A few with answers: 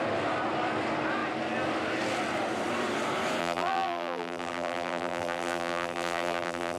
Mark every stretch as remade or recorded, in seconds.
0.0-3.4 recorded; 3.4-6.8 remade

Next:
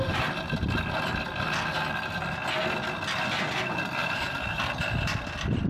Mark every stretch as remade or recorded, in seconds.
0.0-4.0 recorded; 4.0-4.6 remade; 4.6-5.7 recorded

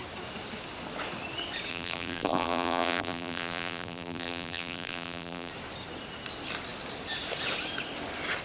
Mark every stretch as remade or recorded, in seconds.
0.0-1.7 recorded; 1.7-5.5 remade; 5.5-8.4 recorded

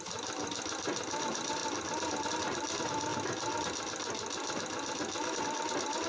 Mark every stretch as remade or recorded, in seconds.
0.0-3.1 remade; 3.1-5.4 recorded; 5.4-6.1 remade

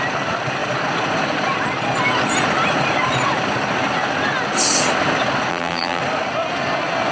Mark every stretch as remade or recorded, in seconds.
0.0-5.5 recorded; 5.5-6.0 remade; 6.0-7.1 recorded

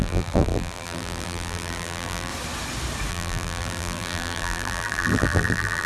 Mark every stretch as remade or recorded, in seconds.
0.0-2.3 remade; 2.3-3.1 recorded; 3.1-5.9 remade

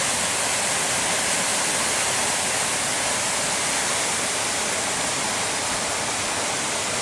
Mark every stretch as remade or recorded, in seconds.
0.0-5.1 recorded; 5.1-5.9 remade; 5.9-7.0 recorded